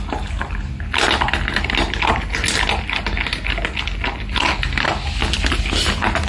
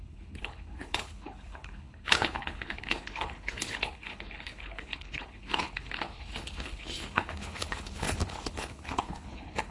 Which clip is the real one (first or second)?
first